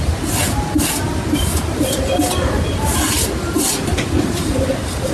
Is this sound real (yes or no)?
yes